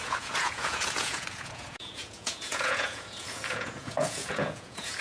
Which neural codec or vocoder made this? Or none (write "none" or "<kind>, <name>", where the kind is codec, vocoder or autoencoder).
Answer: vocoder, Vocos